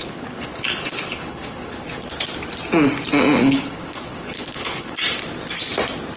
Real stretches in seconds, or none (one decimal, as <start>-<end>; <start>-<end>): 2.1-3.4; 5.0-6.2